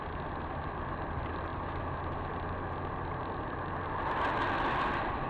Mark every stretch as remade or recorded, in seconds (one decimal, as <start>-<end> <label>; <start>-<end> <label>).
0.0-5.3 recorded